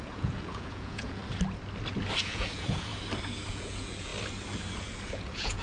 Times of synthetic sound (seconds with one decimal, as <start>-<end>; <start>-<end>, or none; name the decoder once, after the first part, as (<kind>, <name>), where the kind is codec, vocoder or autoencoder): 0.0-1.2 (vocoder, Vocos); 2.2-2.9; 3.5-4.1; 4.8-5.6